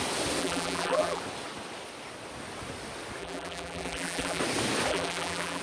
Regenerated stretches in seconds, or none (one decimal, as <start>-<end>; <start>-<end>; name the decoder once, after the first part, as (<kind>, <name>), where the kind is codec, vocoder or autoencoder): 0.4-1.2 (vocoder, BigVGAN v2); 3.2-4.4; 4.9-5.6